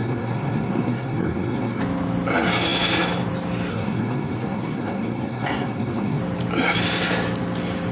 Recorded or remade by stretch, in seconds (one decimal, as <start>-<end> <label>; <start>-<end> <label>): 0.0-1.8 remade; 1.8-3.7 recorded; 3.7-6.2 remade; 6.2-7.9 recorded

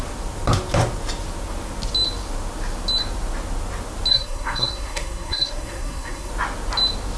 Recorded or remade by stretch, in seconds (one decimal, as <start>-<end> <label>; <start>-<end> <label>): 0.0-4.1 recorded; 4.1-6.3 remade; 6.3-7.2 recorded